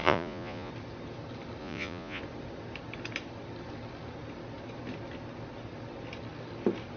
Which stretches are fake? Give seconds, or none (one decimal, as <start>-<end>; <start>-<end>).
0.0-0.7; 1.6-2.2